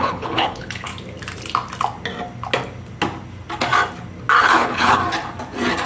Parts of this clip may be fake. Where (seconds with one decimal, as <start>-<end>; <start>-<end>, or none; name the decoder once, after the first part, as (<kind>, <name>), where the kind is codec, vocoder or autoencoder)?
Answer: 0.0-0.9 (codec, HILCodec); 4.4-5.0